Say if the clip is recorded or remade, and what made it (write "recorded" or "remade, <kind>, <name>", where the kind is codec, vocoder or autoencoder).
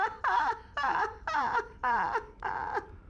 remade, vocoder, BigVGAN v2